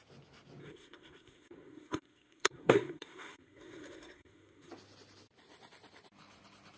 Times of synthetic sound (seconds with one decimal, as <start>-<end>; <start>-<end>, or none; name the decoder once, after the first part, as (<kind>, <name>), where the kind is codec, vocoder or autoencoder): 0.6-4.7 (codec, SNAC)